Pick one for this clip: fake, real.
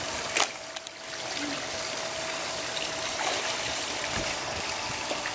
real